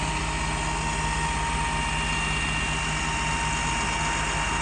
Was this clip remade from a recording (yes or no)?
no